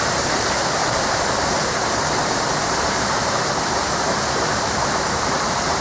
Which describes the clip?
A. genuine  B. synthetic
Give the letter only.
B